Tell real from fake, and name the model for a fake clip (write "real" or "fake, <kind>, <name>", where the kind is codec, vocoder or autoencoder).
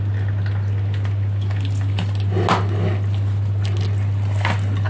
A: real